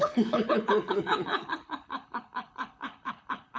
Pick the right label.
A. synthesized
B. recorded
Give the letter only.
A